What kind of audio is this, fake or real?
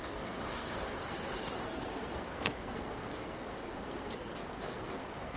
fake